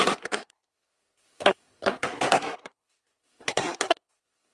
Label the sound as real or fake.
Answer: fake